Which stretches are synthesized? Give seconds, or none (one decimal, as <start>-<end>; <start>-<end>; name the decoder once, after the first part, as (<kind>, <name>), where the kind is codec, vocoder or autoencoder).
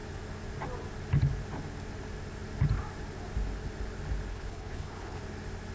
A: 4.3-5.2 (codec, HILCodec)